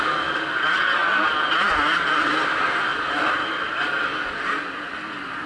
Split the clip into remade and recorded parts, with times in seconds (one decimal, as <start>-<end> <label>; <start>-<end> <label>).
0.0-5.5 recorded